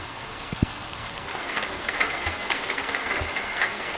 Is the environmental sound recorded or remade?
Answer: remade